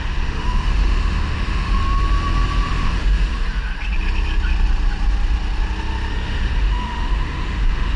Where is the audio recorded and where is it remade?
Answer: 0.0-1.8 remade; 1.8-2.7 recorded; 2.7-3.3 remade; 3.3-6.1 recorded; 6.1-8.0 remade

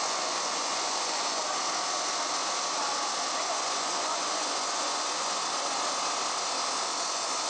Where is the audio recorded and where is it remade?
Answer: 0.0-1.4 remade; 1.4-3.4 recorded; 3.4-5.4 remade; 5.4-7.0 recorded; 7.0-7.5 remade

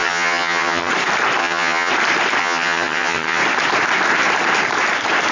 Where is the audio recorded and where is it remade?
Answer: 0.0-0.9 remade; 0.9-1.4 recorded; 1.4-1.9 remade; 1.9-2.4 recorded; 2.4-3.4 remade; 3.4-5.3 recorded